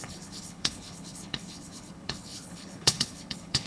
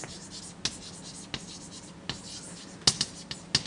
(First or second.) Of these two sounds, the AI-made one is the first